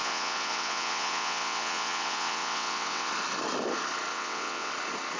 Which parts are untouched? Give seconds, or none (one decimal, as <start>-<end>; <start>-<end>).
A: 3.1-4.1; 4.7-5.2